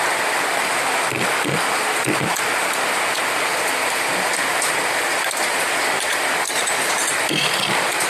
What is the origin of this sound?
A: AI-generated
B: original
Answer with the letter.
B